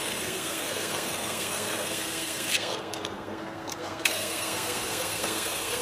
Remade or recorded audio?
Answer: remade